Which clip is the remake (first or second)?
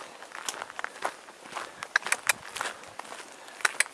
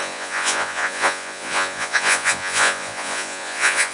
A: second